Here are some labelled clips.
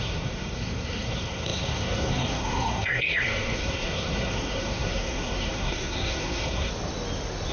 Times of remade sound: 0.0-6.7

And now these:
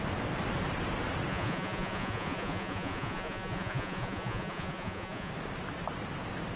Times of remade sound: 1.3-5.3

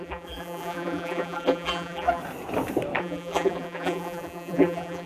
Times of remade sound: 0.0-2.2; 3.0-5.1

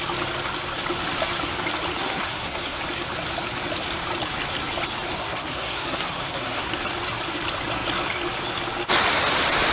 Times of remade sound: 2.0-2.8; 5.2-6.7

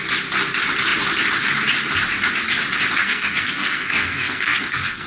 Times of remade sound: 3.0-5.1